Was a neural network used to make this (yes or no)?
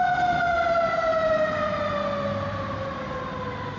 no